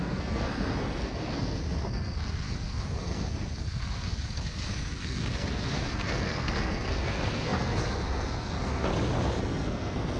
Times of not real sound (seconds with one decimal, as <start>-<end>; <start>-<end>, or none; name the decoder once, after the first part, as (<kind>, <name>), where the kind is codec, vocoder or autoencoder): 0.0-8.9 (codec, SNAC); 9.4-10.2